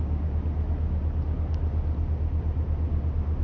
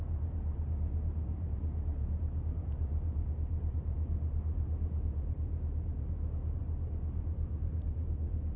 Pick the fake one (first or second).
second